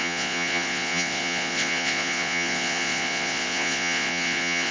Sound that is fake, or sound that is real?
fake